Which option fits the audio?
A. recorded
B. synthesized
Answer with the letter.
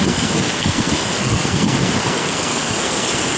B